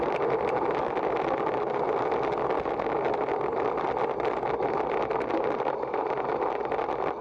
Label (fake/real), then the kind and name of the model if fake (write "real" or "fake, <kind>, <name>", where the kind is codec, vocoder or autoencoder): real